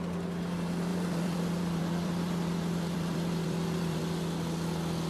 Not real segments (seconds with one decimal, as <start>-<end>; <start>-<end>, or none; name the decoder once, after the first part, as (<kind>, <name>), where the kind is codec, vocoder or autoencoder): 0.9-4.0 (vocoder, BigVGAN v2)